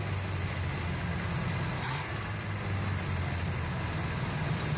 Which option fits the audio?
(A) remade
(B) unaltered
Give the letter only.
B